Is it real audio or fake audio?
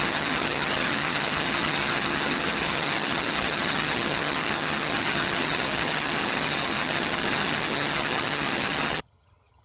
fake